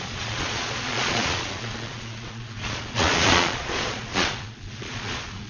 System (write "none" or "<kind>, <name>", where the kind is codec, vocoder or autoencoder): vocoder, Vocos